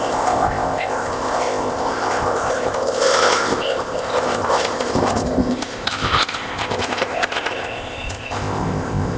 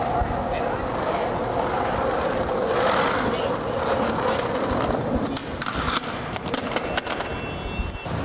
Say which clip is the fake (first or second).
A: first